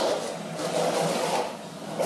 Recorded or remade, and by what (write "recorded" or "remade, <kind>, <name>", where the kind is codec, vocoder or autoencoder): recorded